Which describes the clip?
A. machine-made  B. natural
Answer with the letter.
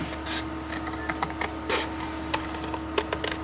B